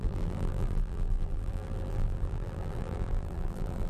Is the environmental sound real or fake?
fake